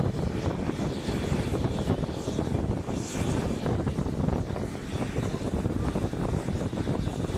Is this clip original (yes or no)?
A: yes